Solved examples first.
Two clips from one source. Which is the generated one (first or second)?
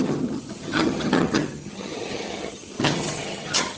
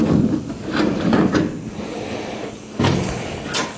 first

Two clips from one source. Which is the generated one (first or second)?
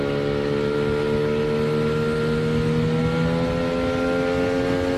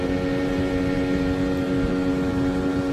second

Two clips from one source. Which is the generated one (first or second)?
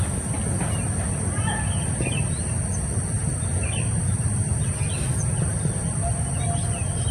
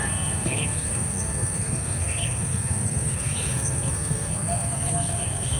second